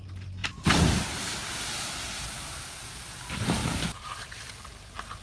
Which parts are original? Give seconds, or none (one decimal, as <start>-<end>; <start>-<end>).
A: 0.0-0.4; 0.9-1.4; 2.9-3.6; 4.5-5.2